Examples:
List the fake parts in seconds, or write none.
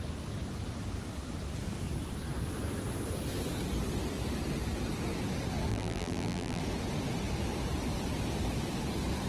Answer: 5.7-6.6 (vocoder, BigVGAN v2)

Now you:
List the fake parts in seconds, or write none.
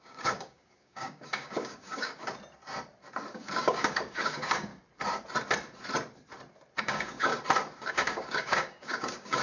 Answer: 0.0-2.3 (codec, DAC); 3.3-4.7; 6.8-7.3; 7.9-9.4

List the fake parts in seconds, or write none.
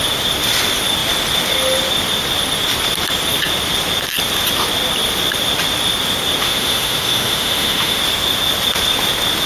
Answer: 6.4-8.0 (autoencoder, DAC-VAE)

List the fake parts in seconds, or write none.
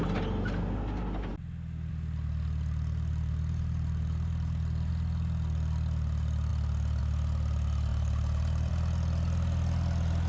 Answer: 3.1-4.9 (vocoder, BigVGAN v2); 7.9-8.7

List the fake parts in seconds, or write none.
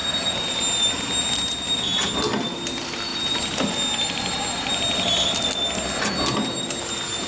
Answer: none